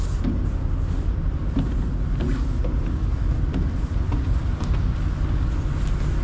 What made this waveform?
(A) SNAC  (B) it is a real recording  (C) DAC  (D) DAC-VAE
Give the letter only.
B